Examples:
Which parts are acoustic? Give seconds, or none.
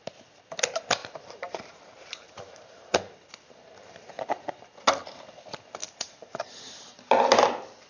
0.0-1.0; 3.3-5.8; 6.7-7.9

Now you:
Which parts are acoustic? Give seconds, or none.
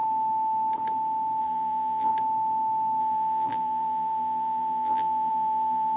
0.0-1.4; 2.1-3.0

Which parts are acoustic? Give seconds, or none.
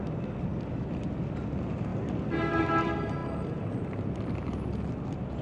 0.0-0.5; 1.0-5.4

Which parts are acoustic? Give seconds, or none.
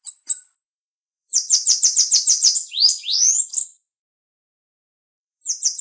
3.4-4.4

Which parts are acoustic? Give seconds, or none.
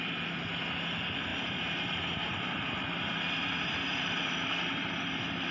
0.0-1.3; 4.6-5.5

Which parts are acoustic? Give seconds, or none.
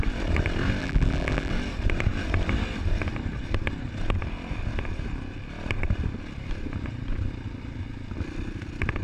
0.0-0.8; 1.5-9.0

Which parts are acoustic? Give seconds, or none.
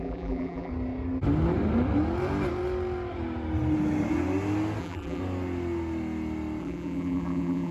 0.7-4.8; 5.2-6.6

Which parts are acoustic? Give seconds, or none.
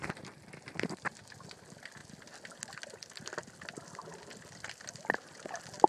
1.1-5.9